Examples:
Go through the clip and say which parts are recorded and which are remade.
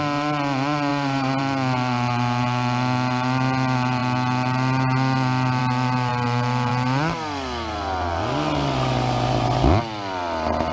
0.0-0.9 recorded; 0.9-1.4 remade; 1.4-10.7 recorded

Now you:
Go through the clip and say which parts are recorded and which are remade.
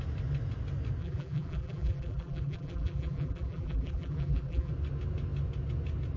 0.0-1.0 recorded; 1.0-4.7 remade; 4.7-6.2 recorded